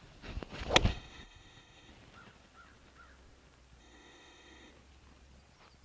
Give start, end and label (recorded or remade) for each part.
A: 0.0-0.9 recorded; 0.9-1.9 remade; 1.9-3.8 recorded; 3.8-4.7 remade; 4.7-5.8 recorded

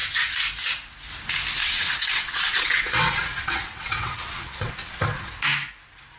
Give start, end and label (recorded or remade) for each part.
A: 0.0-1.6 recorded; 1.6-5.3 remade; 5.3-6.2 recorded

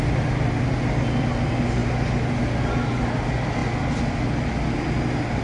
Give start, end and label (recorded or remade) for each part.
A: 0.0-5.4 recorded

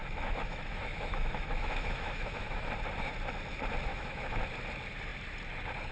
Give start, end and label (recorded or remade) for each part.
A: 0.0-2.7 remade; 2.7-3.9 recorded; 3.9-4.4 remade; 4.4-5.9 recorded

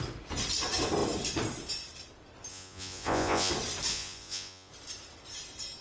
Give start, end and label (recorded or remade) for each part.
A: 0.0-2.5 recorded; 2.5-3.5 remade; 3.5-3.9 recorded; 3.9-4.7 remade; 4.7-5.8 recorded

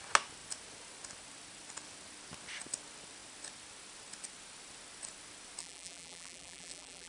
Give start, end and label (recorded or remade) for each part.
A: 0.0-5.6 recorded; 5.6-7.1 remade